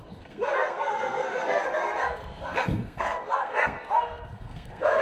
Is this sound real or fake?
fake